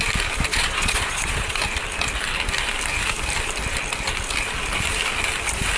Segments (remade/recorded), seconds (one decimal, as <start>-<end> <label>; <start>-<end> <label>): 0.0-0.5 recorded; 0.5-1.6 remade; 1.6-5.8 recorded